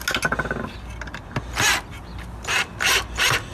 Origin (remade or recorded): recorded